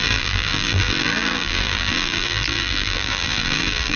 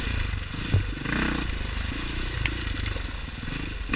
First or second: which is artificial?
first